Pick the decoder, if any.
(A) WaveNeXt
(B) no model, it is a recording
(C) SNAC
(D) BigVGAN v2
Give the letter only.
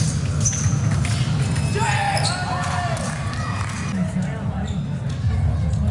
B